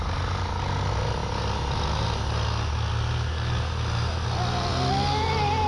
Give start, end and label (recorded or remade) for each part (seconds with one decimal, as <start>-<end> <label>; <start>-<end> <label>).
0.0-5.7 recorded